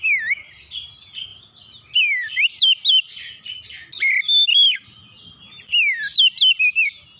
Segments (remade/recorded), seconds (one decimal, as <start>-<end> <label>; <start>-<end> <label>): 0.0-7.2 recorded